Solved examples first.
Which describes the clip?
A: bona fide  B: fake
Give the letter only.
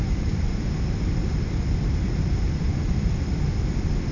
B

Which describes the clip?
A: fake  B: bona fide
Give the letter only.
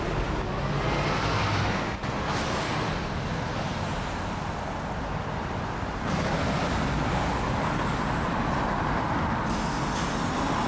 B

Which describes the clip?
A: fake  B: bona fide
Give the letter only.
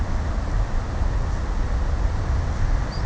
B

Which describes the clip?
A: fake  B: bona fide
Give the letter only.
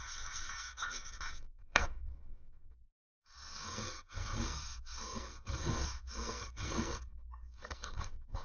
A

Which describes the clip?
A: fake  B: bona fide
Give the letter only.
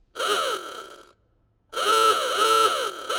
A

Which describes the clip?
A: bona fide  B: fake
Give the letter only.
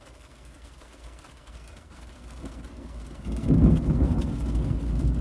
B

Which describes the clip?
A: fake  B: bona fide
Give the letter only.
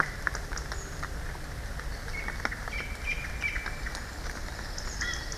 B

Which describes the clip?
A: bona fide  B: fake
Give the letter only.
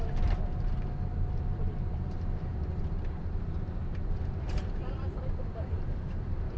B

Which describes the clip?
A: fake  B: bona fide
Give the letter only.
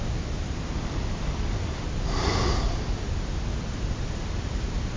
B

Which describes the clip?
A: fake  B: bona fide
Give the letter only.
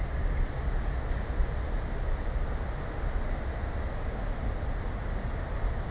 B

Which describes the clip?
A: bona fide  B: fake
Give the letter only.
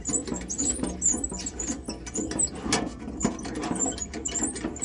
A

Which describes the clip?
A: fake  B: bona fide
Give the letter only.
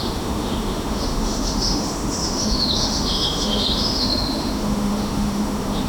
A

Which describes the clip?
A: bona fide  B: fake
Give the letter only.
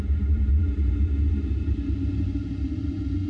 B